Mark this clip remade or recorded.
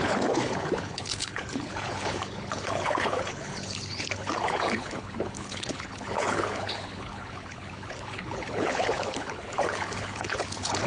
remade